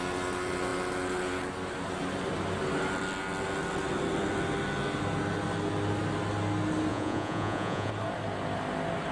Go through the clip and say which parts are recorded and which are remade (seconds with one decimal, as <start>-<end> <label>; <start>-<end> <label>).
0.0-6.9 recorded; 6.9-7.9 remade; 7.9-9.1 recorded